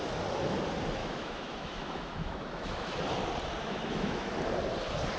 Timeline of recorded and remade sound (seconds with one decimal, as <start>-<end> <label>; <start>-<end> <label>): 0.0-1.0 recorded; 1.0-3.0 remade; 3.0-3.6 recorded; 3.6-4.3 remade; 4.3-5.2 recorded